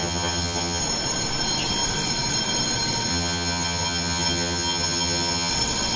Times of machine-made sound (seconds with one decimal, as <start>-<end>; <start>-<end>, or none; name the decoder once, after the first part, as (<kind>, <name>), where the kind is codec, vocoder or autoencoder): 0.0-0.8 (vocoder, HiFi-GAN); 3.1-5.5